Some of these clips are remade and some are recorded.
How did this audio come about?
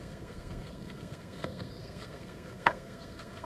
remade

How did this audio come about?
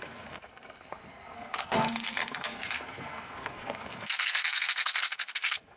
remade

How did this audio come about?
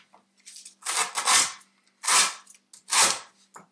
recorded